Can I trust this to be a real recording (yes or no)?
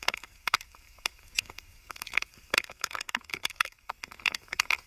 no